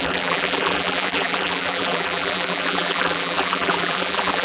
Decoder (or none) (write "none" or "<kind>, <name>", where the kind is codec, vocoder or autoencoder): vocoder, BigVGAN v2